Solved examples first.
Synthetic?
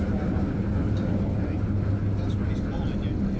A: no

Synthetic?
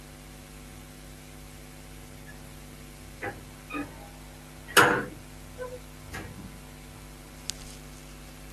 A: no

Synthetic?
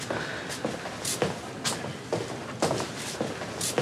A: no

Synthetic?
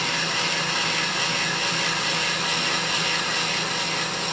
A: no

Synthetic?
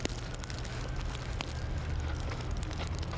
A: no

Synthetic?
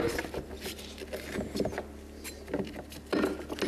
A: no